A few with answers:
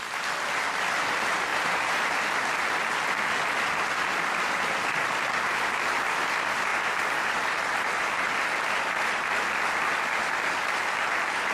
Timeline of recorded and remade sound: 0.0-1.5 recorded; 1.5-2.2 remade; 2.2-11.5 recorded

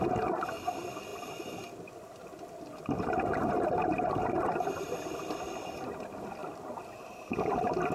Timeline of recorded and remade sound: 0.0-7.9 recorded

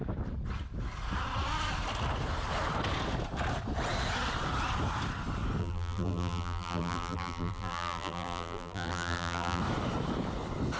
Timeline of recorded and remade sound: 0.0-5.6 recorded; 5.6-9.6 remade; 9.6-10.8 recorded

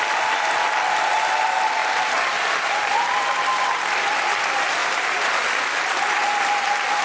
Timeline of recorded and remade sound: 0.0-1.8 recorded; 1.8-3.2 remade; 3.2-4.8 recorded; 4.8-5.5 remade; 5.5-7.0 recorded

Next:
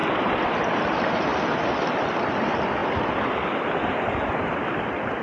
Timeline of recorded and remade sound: 0.0-1.3 remade; 1.3-1.9 recorded; 1.9-2.8 remade; 2.8-4.3 recorded; 4.3-5.2 remade